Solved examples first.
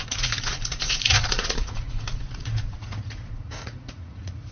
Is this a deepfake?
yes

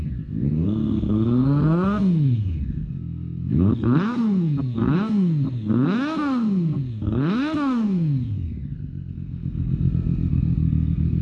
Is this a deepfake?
yes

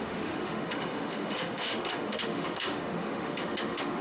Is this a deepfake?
yes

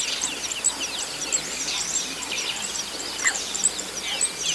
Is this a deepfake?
no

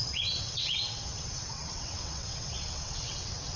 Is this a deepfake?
yes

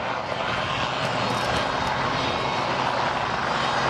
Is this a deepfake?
no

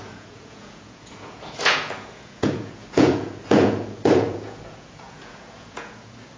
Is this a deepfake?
yes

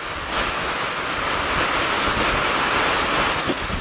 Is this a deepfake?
no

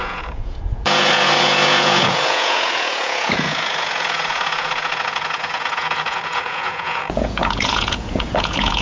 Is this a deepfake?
yes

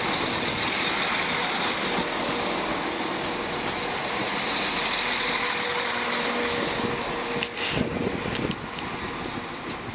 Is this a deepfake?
no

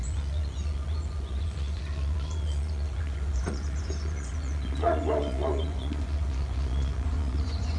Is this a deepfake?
yes